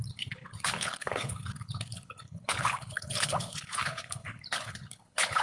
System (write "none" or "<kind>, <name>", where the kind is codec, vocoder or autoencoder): codec, HILCodec